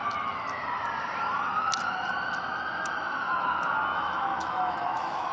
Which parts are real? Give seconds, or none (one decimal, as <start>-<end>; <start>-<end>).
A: 0.0-3.9